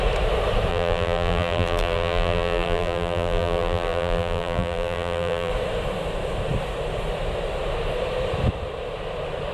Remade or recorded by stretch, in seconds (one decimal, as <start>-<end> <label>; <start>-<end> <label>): 0.0-0.7 recorded; 0.7-5.5 remade; 5.5-9.5 recorded